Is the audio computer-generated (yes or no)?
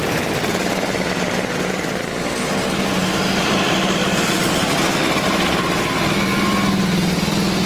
no